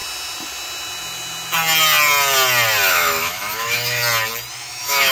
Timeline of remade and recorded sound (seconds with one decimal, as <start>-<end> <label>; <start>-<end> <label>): 0.0-2.9 recorded; 2.9-4.0 remade; 4.0-4.5 recorded; 4.5-5.1 remade